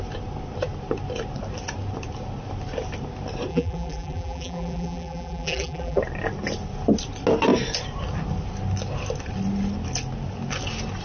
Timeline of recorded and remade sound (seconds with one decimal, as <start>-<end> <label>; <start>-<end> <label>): 0.0-3.5 recorded; 3.5-6.0 remade; 6.0-11.0 recorded